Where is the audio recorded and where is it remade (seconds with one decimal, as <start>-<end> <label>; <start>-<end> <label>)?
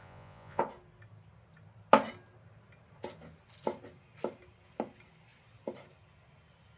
0.0-0.6 remade; 0.6-6.8 recorded